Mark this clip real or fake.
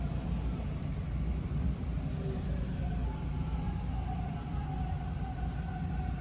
real